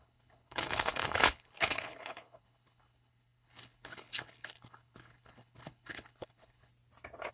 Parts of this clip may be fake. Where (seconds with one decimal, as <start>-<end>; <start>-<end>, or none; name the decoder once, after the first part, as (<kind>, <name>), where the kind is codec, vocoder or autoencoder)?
0.0-6.7 (codec, HILCodec)